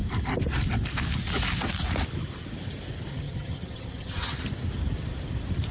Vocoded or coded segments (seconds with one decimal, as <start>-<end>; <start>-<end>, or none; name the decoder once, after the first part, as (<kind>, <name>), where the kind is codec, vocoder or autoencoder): 3.1-4.4 (vocoder, HiFi-GAN)